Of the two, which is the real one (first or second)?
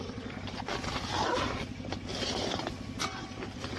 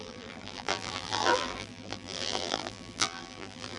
first